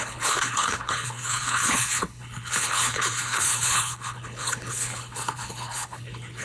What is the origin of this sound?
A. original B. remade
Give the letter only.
B